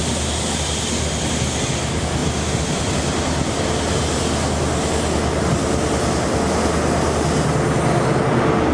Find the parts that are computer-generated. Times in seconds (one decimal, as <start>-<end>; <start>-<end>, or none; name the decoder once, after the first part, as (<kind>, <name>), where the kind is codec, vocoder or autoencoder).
none